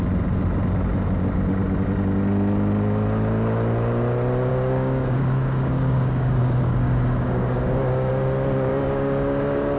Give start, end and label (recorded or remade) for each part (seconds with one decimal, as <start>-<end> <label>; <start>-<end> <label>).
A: 0.0-4.5 recorded; 4.5-8.1 remade; 8.1-8.7 recorded; 8.7-9.8 remade